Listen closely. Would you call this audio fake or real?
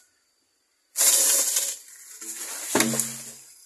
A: real